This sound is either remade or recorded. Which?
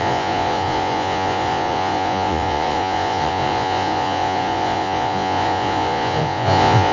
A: remade